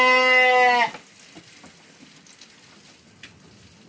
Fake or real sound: real